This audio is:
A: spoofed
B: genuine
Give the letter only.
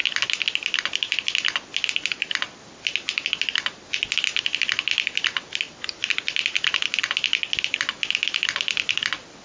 B